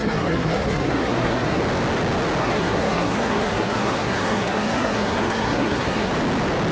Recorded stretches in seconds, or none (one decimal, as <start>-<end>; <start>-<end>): 1.6-2.4; 6.1-6.7